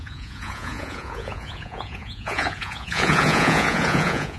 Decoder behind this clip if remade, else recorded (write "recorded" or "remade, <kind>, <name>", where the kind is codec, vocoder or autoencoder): remade, vocoder, Vocos